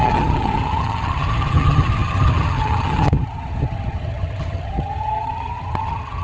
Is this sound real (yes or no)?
no